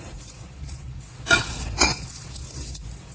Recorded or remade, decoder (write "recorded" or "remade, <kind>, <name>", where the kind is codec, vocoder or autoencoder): remade, vocoder, Vocos